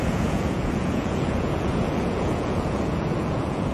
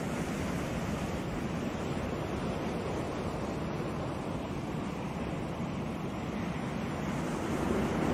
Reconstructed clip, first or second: first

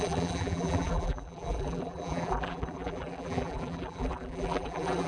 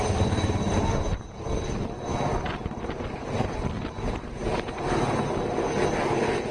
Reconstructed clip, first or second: first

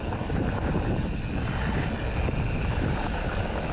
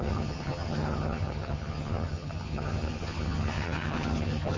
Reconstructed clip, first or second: second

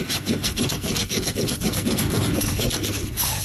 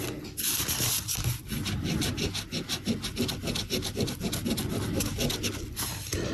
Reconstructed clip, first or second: first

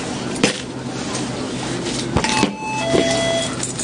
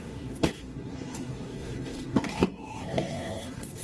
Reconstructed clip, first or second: second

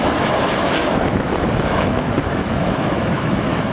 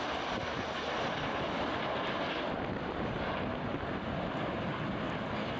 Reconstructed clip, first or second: first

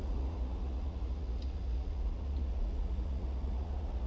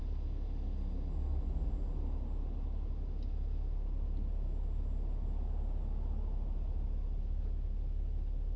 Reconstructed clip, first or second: first